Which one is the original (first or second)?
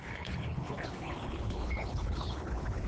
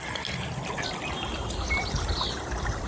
second